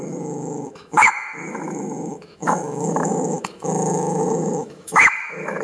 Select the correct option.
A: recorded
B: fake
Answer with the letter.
B